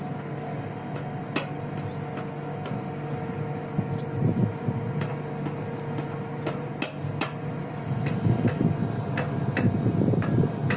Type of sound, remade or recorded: recorded